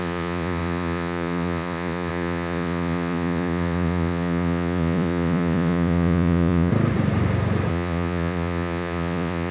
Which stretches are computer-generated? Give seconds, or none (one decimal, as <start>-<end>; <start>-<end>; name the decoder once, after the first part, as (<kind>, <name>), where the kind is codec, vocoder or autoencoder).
0.0-6.7 (vocoder, Vocos); 7.7-9.5

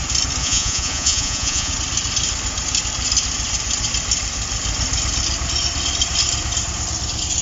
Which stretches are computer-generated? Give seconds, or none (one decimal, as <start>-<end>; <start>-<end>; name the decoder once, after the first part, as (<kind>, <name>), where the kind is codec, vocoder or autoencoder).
0.4-1.7 (vocoder, Vocos)

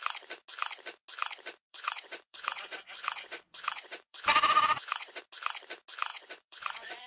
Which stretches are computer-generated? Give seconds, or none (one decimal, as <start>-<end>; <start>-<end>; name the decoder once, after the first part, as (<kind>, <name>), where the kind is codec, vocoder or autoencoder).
1.7-5.2 (vocoder, Vocos); 6.1-7.1

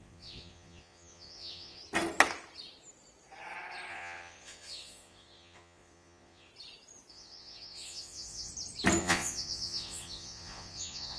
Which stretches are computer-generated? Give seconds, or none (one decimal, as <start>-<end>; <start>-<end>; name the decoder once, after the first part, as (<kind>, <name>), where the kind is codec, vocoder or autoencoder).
0.0-1.8 (vocoder, Vocos); 3.9-6.5; 7.1-8.5; 9.0-11.2

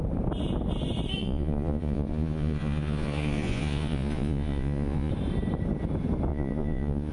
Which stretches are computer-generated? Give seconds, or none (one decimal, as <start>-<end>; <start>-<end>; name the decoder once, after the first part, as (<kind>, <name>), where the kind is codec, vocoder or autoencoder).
1.2-5.1 (vocoder, Vocos); 6.3-7.1